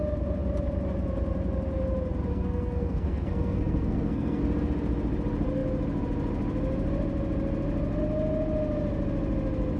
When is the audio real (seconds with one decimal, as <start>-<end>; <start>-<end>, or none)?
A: 0.0-2.3; 4.4-9.8